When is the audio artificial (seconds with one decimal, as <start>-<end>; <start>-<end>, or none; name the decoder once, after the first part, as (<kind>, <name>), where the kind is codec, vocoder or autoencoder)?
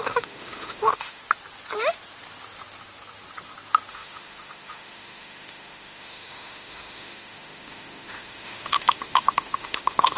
0.0-1.2 (autoencoder, DAC-VAE); 3.9-10.2